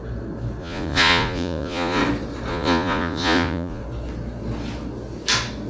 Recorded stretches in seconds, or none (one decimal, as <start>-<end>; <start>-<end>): 0.0-0.6; 2.0-2.5; 3.8-5.7